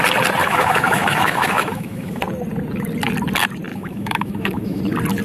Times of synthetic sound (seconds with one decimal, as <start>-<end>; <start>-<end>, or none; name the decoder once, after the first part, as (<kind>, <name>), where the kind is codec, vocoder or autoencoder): 0.4-2.2 (autoencoder, DAC-VAE); 3.7-4.8